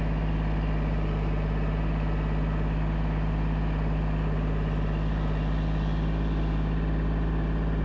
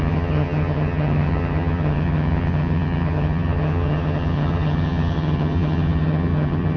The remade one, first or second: second